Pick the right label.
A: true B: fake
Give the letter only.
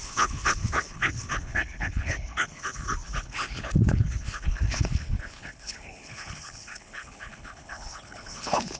B